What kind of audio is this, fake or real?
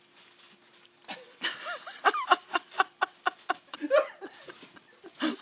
real